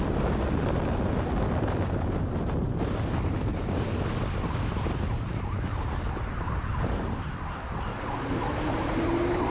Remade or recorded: recorded